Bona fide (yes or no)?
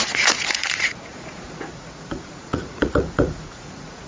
no